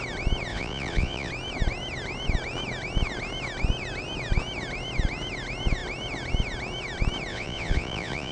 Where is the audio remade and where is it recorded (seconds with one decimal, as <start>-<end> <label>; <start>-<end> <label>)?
0.0-0.5 recorded; 0.5-1.3 remade; 1.3-7.3 recorded; 7.3-8.3 remade